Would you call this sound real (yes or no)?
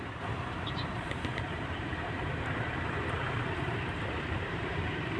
no